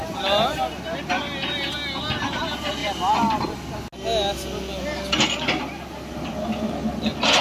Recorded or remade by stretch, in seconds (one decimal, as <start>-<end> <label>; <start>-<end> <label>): 0.0-7.4 recorded